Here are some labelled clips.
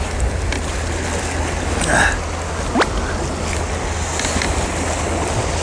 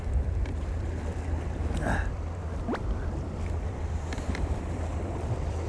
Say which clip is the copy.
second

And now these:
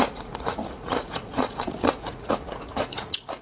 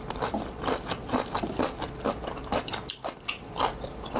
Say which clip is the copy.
first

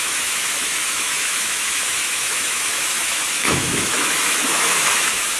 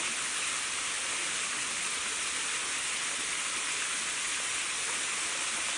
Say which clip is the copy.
first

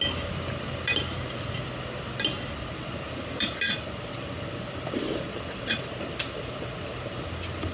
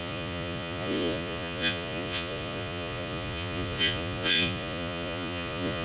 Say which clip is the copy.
second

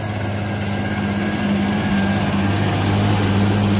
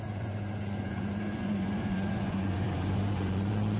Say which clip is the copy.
second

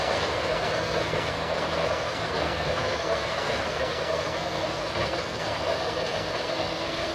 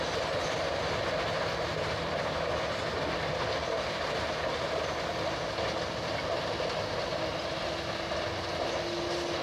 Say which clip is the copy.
first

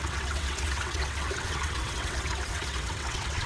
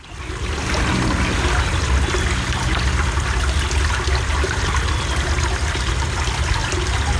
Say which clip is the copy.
first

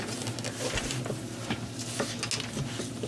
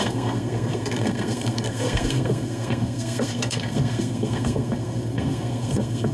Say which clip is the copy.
second